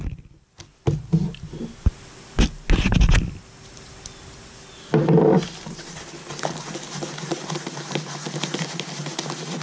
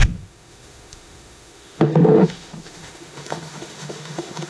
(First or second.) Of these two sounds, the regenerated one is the second